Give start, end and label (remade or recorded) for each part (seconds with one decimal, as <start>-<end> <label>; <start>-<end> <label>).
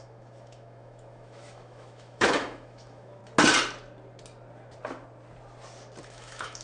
0.0-3.2 remade; 3.2-6.0 recorded; 6.0-6.6 remade